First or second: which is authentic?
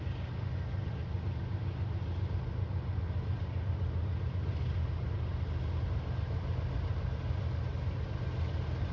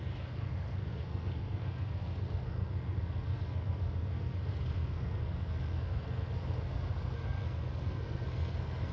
first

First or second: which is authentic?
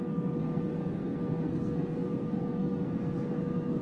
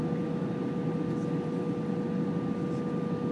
second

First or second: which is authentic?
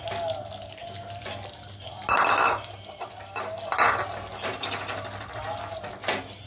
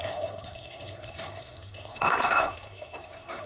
first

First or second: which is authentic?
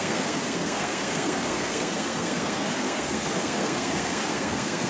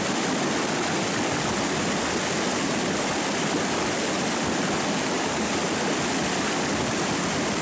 second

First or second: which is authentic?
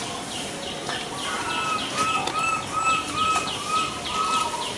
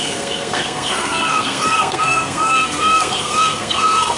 first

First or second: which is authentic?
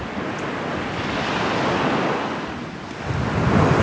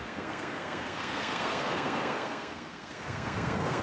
first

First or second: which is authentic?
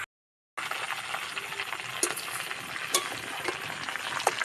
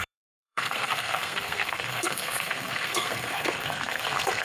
first